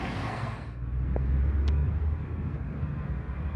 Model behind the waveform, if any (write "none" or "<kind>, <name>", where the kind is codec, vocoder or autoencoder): codec, SNAC